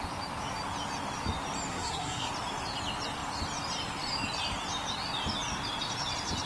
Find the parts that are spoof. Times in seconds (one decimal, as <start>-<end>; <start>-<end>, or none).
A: 1.7-2.3